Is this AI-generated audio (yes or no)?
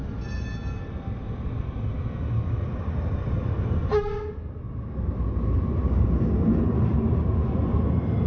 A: no